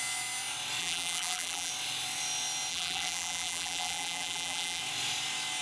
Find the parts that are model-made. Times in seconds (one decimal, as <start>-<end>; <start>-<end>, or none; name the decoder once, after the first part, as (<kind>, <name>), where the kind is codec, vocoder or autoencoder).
0.8-1.7 (vocoder, BigVGAN v2); 2.7-4.8